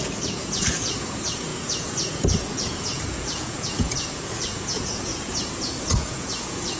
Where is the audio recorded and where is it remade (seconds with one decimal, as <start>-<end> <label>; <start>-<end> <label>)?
0.0-6.8 remade